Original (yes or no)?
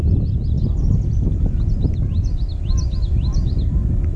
yes